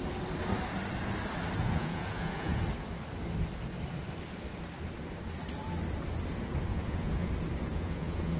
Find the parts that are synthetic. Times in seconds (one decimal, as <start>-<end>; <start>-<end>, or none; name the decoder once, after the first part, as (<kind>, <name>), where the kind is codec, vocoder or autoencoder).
1.6-2.6 (vocoder, Vocos); 6.7-7.3; 7.7-8.4